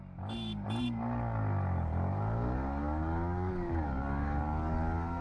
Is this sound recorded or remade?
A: remade